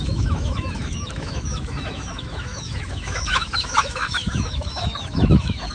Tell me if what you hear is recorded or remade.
remade